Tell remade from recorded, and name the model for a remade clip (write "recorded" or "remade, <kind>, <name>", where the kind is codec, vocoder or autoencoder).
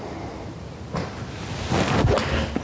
recorded